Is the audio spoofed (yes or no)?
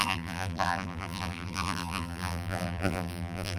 yes